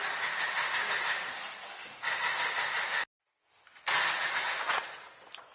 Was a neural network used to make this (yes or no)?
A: no